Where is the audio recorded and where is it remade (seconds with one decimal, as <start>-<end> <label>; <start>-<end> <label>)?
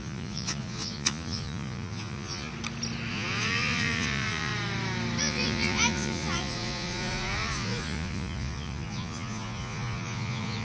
0.0-2.5 remade; 2.5-3.1 recorded; 3.1-4.5 remade; 4.5-5.2 recorded; 5.2-10.6 remade